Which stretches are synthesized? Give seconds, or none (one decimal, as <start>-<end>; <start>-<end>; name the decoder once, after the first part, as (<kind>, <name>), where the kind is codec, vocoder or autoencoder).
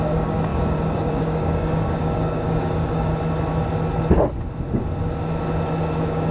0.0-3.1 (codec, DAC); 5.8-6.3